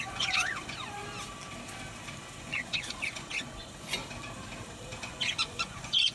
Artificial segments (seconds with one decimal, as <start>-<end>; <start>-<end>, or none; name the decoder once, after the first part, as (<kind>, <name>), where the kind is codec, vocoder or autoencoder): 0.0-1.0 (vocoder, Vocos); 2.4-4.0; 5.0-6.1